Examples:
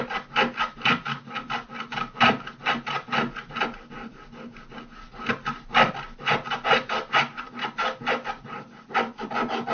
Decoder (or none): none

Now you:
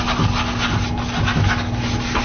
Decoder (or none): none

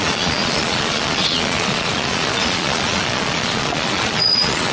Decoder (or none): vocoder, Vocos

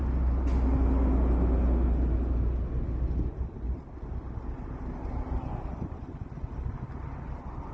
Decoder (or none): none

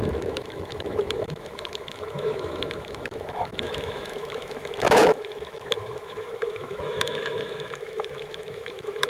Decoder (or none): autoencoder, DAC-VAE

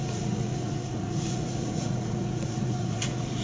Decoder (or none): vocoder, Vocos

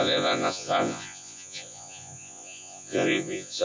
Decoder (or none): vocoder, Vocos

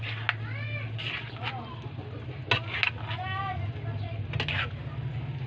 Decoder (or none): none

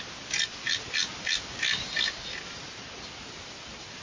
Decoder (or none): none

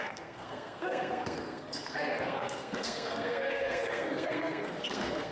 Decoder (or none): codec, SNAC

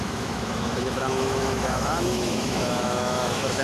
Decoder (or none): autoencoder, DAC-VAE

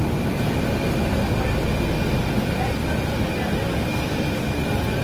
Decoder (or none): none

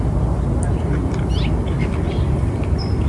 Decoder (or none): none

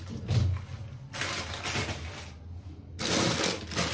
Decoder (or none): none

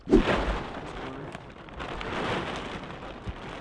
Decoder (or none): none